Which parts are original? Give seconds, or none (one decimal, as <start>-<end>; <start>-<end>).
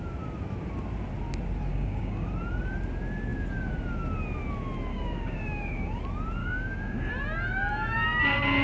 0.0-1.7; 2.3-4.9; 6.0-6.4; 7.1-8.6